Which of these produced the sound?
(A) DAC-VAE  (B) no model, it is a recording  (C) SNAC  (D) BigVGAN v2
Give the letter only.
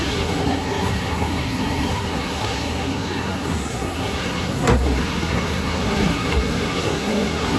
C